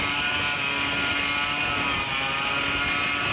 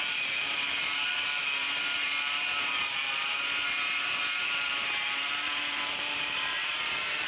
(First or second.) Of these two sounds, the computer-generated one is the second